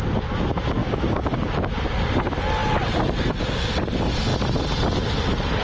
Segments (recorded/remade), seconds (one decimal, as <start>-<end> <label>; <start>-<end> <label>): 0.0-0.8 recorded; 0.8-1.5 remade; 1.5-5.6 recorded